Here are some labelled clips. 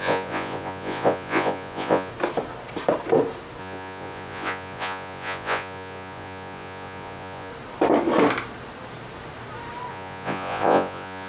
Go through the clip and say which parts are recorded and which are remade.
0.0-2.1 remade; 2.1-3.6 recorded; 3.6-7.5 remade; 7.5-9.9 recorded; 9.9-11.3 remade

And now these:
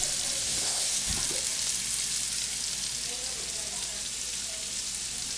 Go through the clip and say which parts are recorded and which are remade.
0.0-0.4 recorded; 0.4-1.1 remade; 1.1-5.4 recorded

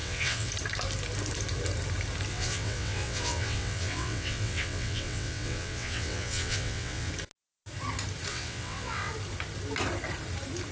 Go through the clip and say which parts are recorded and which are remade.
0.0-0.5 remade; 0.5-2.3 recorded; 2.3-7.1 remade; 7.1-8.3 recorded; 8.3-9.1 remade; 9.1-10.7 recorded

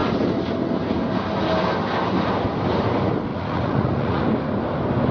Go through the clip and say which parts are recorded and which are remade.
0.0-3.3 recorded; 3.3-4.2 remade; 4.2-5.1 recorded

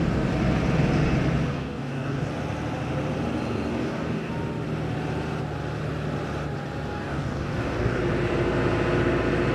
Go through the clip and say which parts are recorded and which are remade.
0.0-1.5 recorded; 1.5-2.3 remade; 2.3-3.7 recorded; 3.7-4.3 remade; 4.3-6.9 recorded; 6.9-8.0 remade; 8.0-9.5 recorded

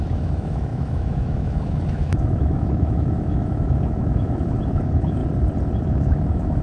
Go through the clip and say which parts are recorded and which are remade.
0.0-5.2 remade; 5.2-5.8 recorded; 5.8-6.6 remade

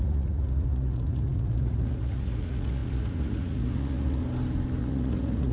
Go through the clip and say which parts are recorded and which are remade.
0.0-4.2 remade; 4.2-4.8 recorded; 4.8-5.5 remade